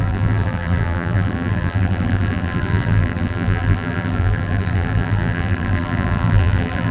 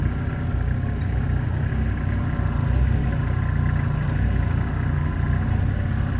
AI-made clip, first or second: first